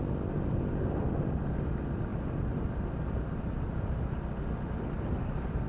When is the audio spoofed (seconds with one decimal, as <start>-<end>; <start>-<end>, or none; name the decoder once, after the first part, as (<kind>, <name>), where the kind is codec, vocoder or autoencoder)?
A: none